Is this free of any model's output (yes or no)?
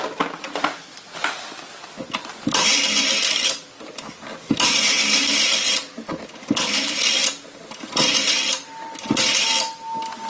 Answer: yes